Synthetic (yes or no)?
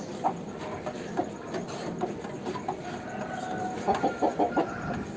no